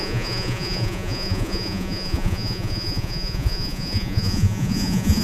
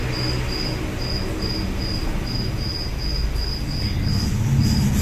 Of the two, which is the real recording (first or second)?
second